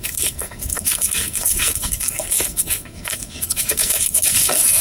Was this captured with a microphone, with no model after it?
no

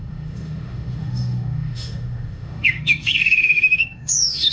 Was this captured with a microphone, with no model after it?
no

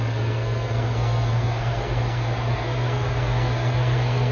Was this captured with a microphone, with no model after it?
no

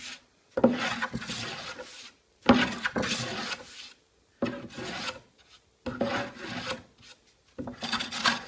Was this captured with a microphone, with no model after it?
yes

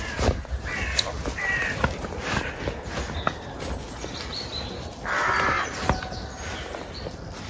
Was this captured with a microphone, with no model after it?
yes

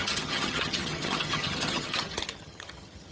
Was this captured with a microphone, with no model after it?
no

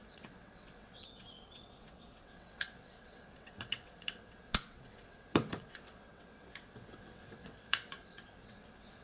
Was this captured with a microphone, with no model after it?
no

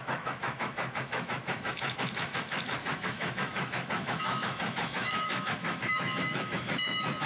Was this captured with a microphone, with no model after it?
no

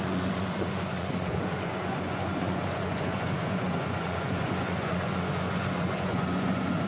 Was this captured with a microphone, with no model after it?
no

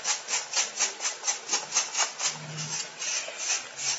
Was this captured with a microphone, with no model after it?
yes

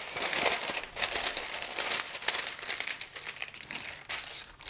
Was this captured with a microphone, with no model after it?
no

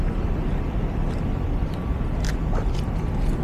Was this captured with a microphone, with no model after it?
yes